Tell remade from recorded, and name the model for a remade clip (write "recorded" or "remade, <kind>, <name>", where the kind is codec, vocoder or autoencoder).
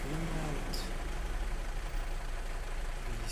recorded